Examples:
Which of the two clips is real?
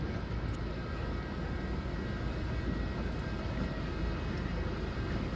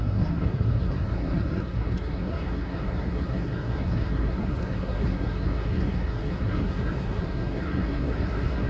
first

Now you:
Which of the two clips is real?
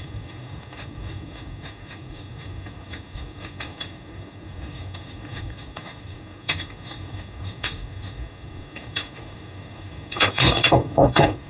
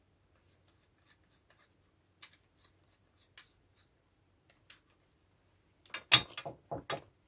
second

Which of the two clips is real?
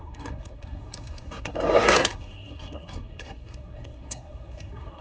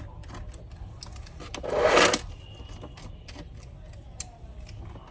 second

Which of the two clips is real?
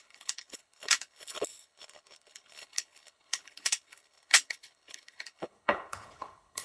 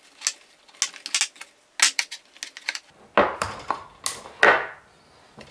second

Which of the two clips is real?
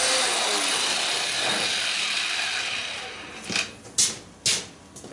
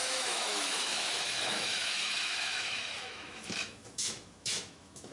first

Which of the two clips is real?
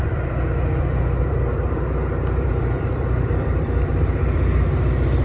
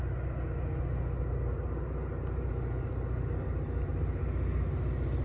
second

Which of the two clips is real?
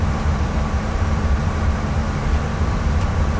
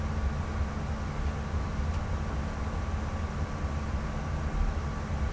second